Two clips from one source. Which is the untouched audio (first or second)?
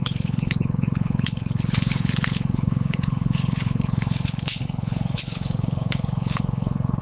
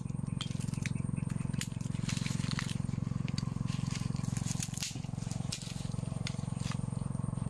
second